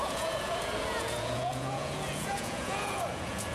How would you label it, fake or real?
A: fake